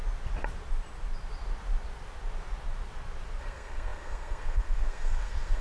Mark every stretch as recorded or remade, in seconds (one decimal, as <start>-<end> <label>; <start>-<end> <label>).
0.0-3.4 recorded; 3.4-5.6 remade

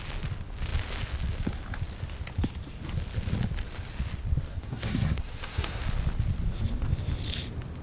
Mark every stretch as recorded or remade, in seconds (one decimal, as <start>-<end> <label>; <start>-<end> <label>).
0.0-4.5 recorded; 4.5-5.8 remade; 5.8-7.8 recorded

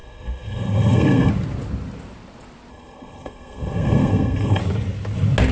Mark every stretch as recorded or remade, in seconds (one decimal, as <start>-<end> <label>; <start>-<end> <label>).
0.0-1.3 remade; 1.3-2.7 recorded; 2.7-4.6 remade; 4.6-5.5 recorded

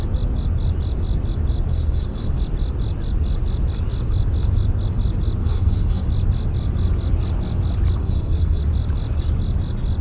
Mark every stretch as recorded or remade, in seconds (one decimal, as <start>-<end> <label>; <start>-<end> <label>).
0.0-1.7 recorded; 1.7-2.4 remade; 2.4-5.4 recorded; 5.4-6.1 remade; 6.1-8.0 recorded; 8.0-8.6 remade; 8.6-10.0 recorded

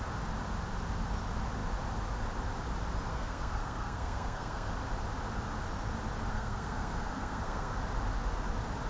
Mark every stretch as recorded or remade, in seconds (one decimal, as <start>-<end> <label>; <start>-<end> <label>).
0.0-3.1 recorded; 3.1-4.7 remade; 4.7-6.3 recorded; 6.3-7.8 remade; 7.8-8.9 recorded

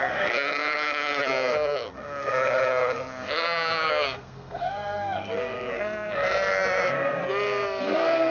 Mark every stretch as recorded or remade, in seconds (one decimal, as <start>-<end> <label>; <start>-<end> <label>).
0.0-7.2 remade; 7.2-7.8 recorded; 7.8-8.3 remade

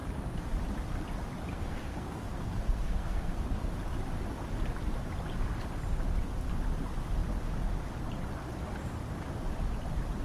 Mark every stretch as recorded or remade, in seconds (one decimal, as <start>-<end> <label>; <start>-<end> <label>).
0.0-1.5 recorded; 1.5-3.7 remade; 3.7-10.2 recorded

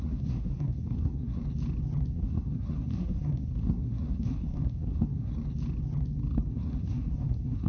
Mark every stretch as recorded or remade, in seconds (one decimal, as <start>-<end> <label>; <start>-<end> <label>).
0.0-1.4 remade; 1.4-2.1 recorded; 2.1-5.3 remade; 5.3-6.5 recorded; 6.5-7.7 remade